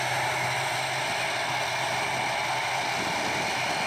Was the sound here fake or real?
real